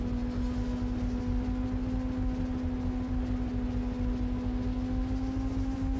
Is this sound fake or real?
real